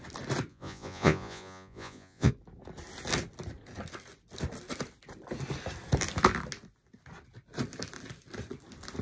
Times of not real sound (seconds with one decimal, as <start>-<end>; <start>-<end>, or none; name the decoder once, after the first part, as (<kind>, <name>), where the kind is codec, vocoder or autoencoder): 0.5-2.3 (vocoder, Vocos)